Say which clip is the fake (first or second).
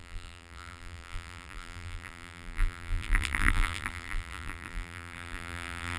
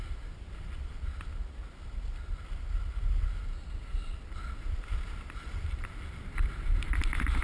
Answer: first